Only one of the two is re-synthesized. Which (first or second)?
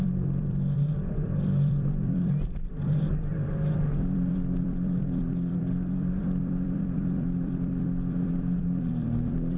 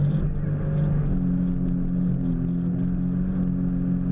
first